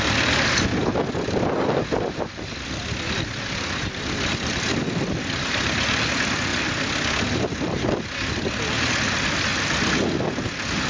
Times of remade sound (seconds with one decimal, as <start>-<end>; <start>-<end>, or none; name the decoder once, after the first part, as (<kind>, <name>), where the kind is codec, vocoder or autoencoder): none